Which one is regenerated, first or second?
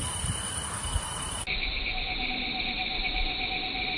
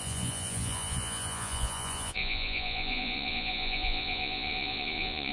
second